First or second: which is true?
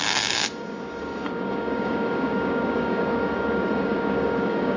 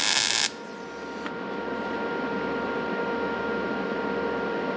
second